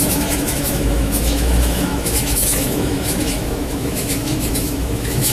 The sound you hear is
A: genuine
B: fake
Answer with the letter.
B